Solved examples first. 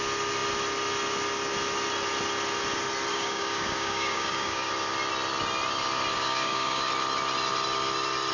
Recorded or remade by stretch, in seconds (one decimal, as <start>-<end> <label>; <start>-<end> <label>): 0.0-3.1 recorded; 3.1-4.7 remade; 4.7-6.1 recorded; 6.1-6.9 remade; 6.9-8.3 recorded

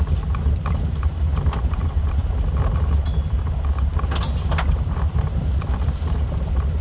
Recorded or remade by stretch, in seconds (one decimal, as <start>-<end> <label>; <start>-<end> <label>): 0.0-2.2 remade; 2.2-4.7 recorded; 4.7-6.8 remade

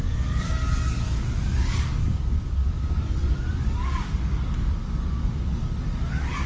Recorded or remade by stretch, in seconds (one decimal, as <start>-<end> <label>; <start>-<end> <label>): 0.0-6.5 remade

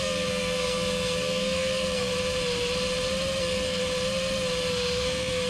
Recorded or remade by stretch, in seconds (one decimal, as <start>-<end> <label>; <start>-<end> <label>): 0.0-2.1 remade; 2.1-3.4 recorded; 3.4-3.8 remade; 3.8-4.7 recorded; 4.7-5.5 remade

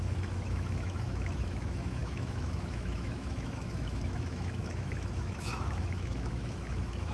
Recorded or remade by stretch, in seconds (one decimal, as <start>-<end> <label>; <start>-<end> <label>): 0.0-7.1 remade